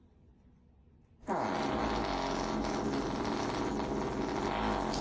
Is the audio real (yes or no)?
yes